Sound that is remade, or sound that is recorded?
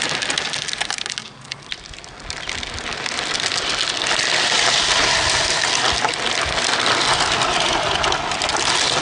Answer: recorded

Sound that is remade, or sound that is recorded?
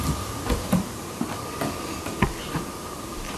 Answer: recorded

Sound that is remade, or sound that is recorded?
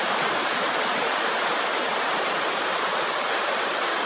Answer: recorded